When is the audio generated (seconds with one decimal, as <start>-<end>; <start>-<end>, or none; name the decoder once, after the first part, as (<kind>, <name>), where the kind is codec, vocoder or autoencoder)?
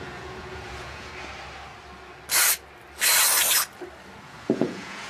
0.0-1.1 (vocoder, Vocos); 4.2-5.1